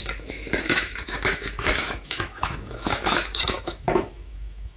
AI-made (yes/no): yes